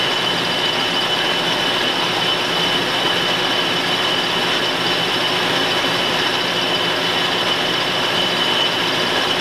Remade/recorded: recorded